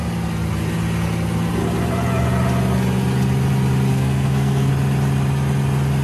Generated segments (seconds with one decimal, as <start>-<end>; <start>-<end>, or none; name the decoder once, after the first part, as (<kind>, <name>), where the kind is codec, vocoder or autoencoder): 3.9-4.7 (codec, SNAC)